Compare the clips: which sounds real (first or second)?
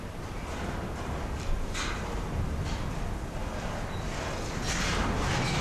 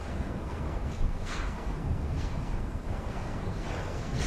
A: first